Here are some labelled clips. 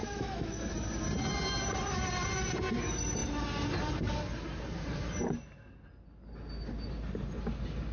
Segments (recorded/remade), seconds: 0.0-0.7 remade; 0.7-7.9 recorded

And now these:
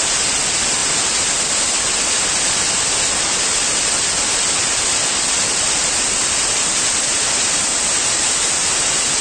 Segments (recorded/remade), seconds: 0.0-9.2 recorded

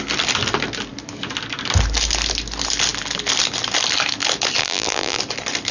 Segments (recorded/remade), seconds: 0.0-4.6 recorded; 4.6-5.2 remade; 5.2-5.7 recorded

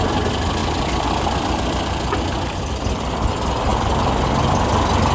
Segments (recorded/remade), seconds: 0.0-5.1 recorded

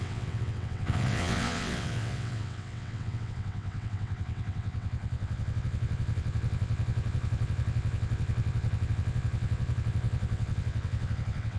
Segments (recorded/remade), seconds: 0.0-11.6 remade

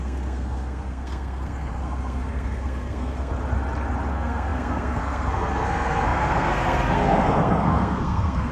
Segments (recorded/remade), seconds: 0.0-3.3 remade; 3.3-4.1 recorded; 4.1-8.5 remade